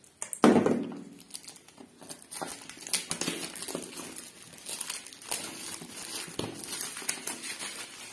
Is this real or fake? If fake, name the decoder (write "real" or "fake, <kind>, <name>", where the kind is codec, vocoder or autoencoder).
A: real